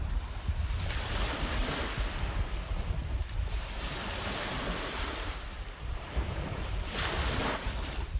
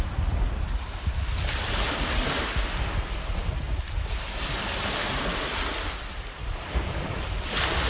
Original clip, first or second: second